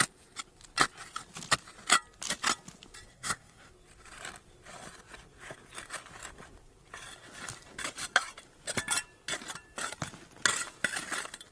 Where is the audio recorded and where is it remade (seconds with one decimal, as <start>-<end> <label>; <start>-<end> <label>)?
0.0-3.1 recorded; 3.1-3.7 remade; 3.7-11.5 recorded